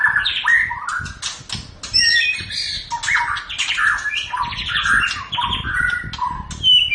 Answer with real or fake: real